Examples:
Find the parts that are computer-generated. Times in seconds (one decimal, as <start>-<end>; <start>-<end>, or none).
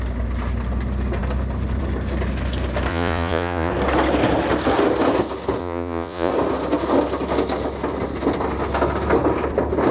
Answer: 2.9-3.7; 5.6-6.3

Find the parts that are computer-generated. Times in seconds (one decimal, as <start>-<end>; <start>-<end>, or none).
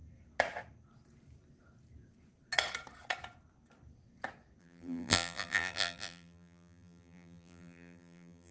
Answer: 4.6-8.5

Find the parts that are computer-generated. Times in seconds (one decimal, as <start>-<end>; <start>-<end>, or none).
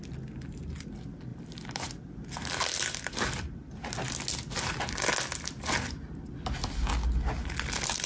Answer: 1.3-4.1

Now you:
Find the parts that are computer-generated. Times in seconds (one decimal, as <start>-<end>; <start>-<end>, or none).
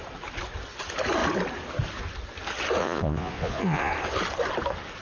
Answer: 2.8-3.9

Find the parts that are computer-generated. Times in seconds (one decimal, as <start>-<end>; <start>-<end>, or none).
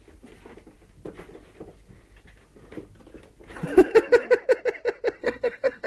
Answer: 5.2-5.9